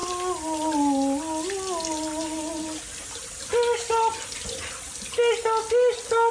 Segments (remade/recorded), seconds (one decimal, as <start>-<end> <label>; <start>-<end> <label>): 0.0-6.3 recorded